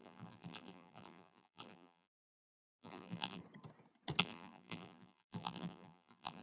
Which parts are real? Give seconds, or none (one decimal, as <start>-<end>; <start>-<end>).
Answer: 3.4-4.2